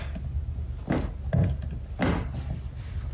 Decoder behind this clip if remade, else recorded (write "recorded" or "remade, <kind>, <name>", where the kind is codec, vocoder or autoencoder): recorded